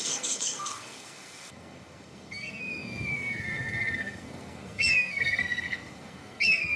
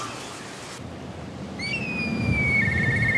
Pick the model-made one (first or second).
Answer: first